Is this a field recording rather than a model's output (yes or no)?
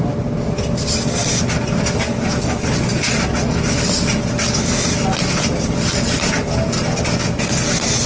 yes